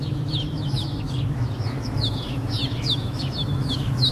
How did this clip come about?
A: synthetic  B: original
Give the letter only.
A